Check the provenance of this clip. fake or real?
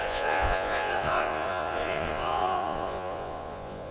fake